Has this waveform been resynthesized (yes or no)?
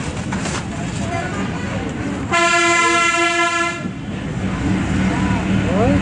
no